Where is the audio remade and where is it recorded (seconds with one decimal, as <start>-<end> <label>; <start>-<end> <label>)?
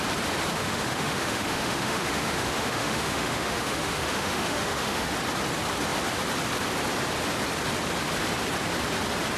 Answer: 0.0-0.5 recorded; 0.5-5.1 remade; 5.1-9.4 recorded